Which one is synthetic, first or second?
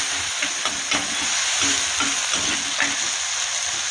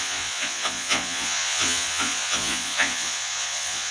second